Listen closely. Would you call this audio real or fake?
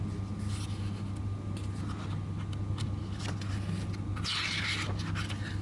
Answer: real